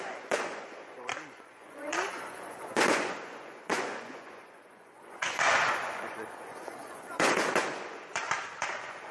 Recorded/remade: remade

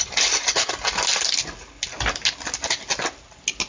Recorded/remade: recorded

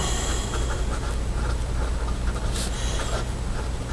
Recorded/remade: recorded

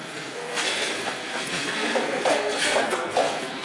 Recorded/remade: remade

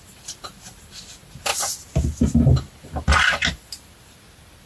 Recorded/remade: recorded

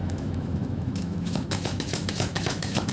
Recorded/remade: remade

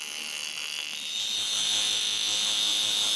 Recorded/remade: recorded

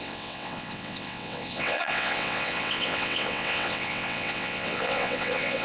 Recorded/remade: remade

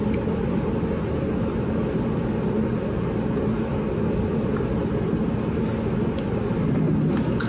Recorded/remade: recorded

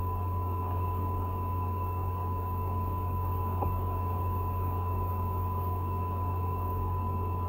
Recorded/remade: remade